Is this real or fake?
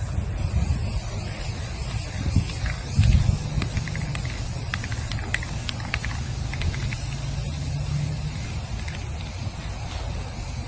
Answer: real